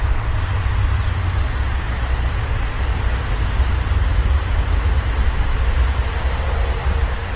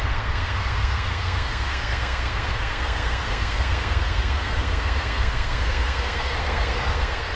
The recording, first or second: first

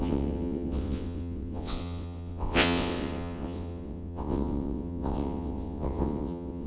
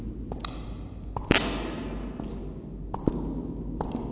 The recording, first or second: second